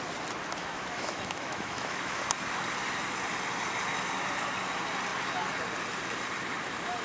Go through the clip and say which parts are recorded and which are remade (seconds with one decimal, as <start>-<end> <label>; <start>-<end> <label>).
0.0-0.6 recorded; 0.6-2.2 remade; 2.2-7.0 recorded